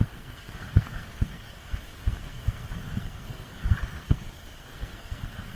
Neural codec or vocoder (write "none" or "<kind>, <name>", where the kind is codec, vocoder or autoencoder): codec, SNAC